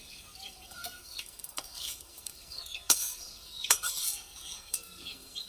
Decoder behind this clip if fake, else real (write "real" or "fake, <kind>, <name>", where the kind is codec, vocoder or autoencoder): fake, codec, SNAC